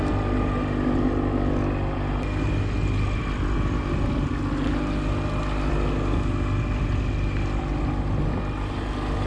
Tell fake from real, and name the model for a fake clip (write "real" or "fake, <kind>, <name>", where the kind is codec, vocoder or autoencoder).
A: real